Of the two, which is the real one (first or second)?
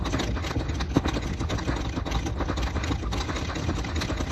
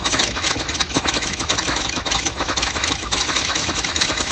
first